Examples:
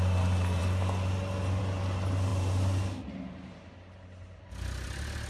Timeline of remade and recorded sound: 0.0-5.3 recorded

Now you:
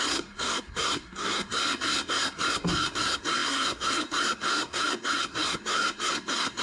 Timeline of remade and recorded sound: 0.0-6.6 remade

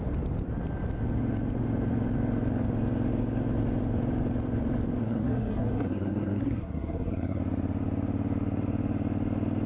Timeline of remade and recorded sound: 0.0-5.0 recorded; 5.0-7.4 remade; 7.4-9.7 recorded

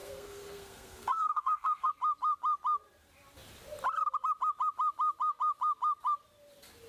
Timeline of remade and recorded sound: 0.0-1.9 remade; 1.9-6.9 recorded

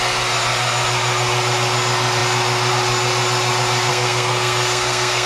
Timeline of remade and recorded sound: 0.0-3.9 recorded; 3.9-5.3 remade

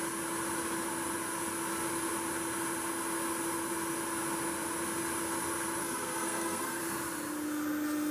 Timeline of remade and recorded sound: 0.0-5.8 recorded; 5.8-6.8 remade; 6.8-8.1 recorded

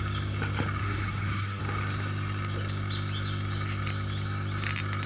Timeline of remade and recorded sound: 0.0-0.8 recorded; 0.8-1.6 remade; 1.6-5.1 recorded

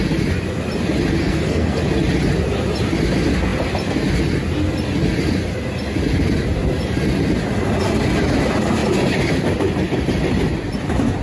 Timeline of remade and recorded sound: 0.0-1.2 recorded; 1.2-1.8 remade; 1.8-11.2 recorded